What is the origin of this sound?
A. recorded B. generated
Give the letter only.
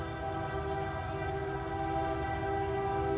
A